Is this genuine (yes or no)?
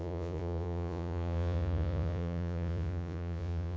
no